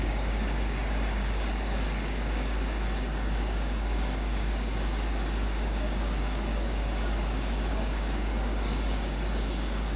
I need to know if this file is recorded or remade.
remade